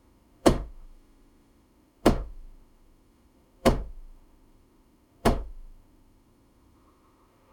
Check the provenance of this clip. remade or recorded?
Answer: remade